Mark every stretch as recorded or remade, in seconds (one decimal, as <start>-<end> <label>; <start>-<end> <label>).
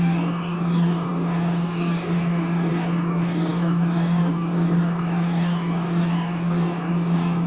0.0-7.5 remade